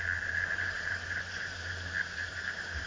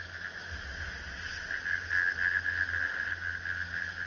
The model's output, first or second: first